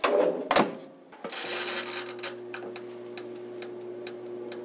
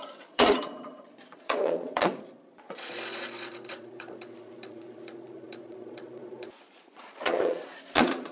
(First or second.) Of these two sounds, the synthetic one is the second